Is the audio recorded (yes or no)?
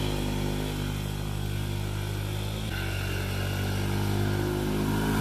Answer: yes